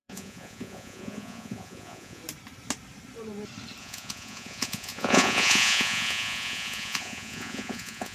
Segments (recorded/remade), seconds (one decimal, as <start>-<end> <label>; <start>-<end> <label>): 0.0-2.2 remade; 2.2-3.8 recorded; 3.8-8.1 remade